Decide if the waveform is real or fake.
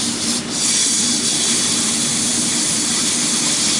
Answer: real